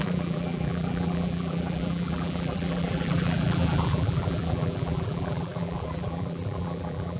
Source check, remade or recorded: remade